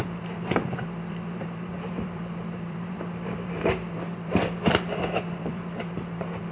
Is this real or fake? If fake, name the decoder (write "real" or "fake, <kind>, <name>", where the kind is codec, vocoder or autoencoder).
fake, vocoder, BigVGAN v2